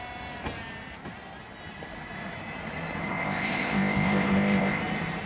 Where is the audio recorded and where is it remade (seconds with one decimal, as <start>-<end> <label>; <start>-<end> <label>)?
0.0-3.1 recorded; 3.1-4.8 remade; 4.8-5.3 recorded